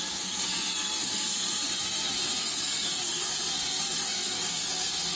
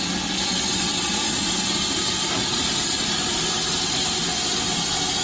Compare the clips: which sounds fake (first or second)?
first